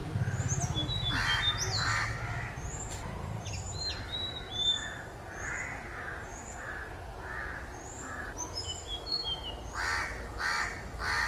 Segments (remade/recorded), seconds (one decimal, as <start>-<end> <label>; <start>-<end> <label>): 0.0-8.8 recorded; 8.8-9.5 remade; 9.5-11.3 recorded